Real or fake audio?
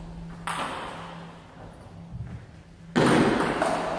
real